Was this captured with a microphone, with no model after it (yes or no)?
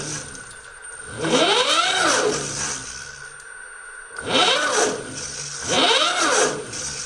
yes